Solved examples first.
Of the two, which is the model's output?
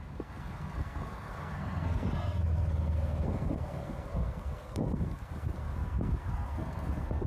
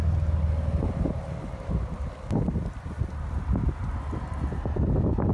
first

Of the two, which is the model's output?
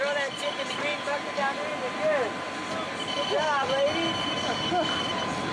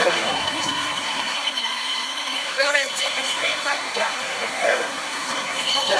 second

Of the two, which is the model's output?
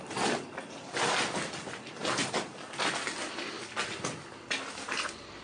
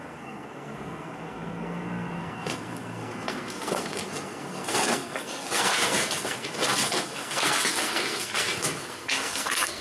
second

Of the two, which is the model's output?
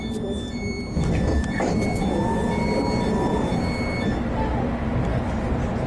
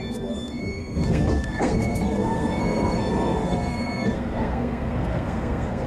second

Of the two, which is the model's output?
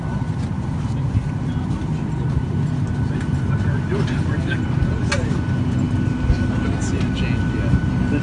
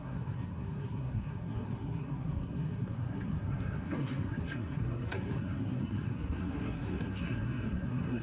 second